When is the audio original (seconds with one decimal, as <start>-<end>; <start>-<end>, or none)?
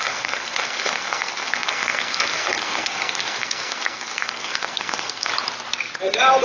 5.3-6.4